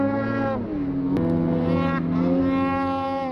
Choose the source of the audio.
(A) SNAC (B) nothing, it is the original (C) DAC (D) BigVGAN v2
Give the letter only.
B